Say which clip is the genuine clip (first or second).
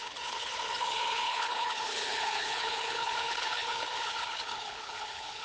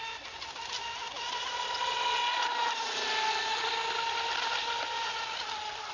second